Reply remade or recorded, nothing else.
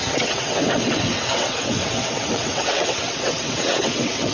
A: remade